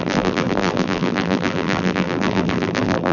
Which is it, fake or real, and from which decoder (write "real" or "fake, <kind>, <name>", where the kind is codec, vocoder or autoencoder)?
fake, vocoder, BigVGAN v2